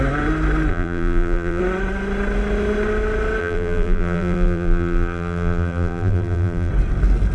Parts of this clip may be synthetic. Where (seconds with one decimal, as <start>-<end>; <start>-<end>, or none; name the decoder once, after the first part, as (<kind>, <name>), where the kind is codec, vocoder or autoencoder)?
0.7-1.6 (vocoder, BigVGAN v2); 3.4-6.7